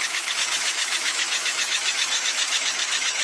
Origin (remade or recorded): remade